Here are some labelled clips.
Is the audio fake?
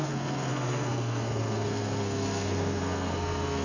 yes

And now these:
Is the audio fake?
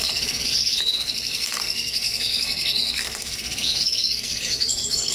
yes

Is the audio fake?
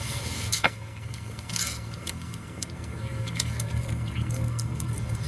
yes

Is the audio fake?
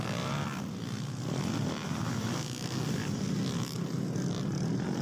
no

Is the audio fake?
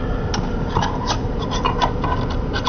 no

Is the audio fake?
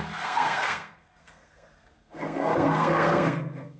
yes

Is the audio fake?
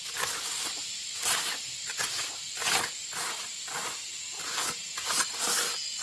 no